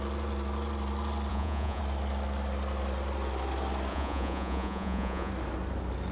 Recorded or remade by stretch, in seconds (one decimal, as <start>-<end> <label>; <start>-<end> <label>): 0.0-1.3 recorded; 1.3-1.8 remade; 1.8-3.9 recorded; 3.9-5.3 remade; 5.3-6.1 recorded